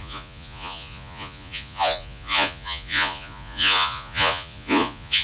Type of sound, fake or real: fake